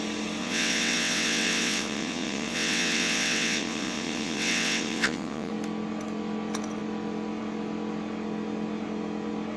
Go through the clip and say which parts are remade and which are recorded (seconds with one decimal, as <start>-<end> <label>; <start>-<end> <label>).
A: 0.0-0.4 recorded; 0.4-5.5 remade; 5.5-9.6 recorded